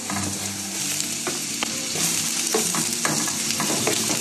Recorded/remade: remade